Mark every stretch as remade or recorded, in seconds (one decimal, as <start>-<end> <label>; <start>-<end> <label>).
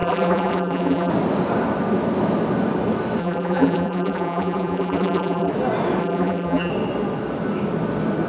0.0-1.1 remade; 1.1-3.2 recorded; 3.2-5.5 remade; 5.5-6.0 recorded; 6.0-6.7 remade; 6.7-8.3 recorded